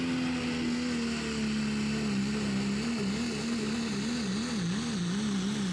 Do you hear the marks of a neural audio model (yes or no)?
no